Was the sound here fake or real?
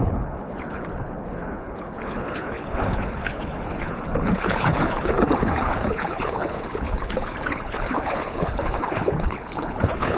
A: fake